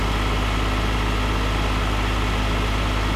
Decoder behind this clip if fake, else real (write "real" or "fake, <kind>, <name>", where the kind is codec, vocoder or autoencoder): real